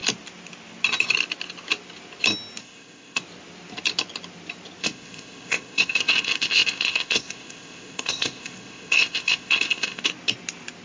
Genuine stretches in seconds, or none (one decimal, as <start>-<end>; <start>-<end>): 0.0-2.6; 3.2-4.8; 10.0-10.8